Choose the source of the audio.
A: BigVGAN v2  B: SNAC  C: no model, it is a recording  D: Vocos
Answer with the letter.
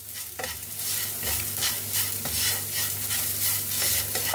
C